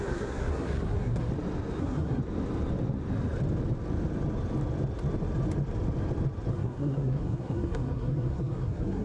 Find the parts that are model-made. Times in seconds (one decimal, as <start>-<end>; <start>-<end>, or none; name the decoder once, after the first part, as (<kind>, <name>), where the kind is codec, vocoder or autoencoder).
0.0-1.3 (codec, SNAC); 1.8-2.2; 6.5-9.0

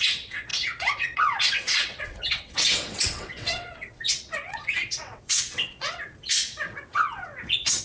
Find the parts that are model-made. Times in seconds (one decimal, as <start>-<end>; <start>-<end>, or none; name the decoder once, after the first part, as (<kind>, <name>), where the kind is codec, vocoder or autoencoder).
0.0-7.8 (vocoder, WaveNeXt)

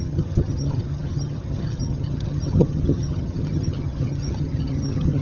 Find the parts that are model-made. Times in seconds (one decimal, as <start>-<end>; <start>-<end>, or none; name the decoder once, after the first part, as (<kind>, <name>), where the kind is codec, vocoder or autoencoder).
0.0-5.2 (vocoder, HiFi-GAN)

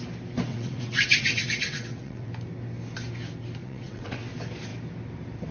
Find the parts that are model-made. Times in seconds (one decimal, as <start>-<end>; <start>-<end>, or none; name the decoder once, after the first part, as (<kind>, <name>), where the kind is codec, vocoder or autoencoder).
0.5-2.3 (vocoder, WaveNeXt); 3.6-4.2

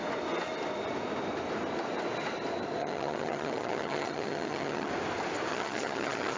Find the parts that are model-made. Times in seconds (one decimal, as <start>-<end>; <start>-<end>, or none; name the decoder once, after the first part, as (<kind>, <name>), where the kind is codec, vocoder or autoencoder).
2.8-4.9 (vocoder, HiFi-GAN); 5.5-6.4

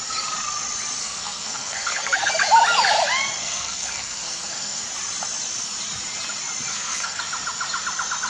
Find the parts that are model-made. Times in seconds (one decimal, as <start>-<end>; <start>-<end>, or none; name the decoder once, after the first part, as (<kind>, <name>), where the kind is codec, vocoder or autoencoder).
1.0-2.3 (codec, SNAC); 3.4-4.8; 6.7-7.2

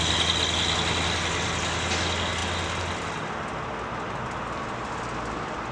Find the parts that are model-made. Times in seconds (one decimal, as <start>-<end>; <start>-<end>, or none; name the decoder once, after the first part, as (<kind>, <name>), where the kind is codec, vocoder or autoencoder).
none